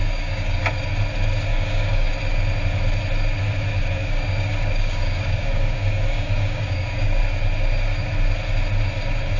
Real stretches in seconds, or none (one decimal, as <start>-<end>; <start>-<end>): 0.6-1.5; 2.1-3.8; 7.2-9.4